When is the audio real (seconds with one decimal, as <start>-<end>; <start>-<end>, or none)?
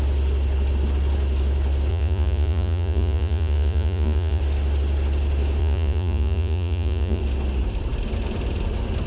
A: 0.0-1.9; 4.4-5.6; 7.2-9.1